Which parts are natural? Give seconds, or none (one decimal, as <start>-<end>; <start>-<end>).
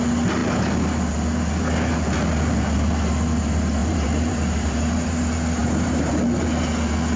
0.0-3.8; 4.8-5.6; 6.1-7.2